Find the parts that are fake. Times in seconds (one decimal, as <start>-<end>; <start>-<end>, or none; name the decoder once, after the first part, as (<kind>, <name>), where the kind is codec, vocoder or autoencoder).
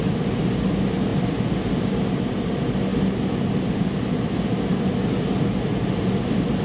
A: none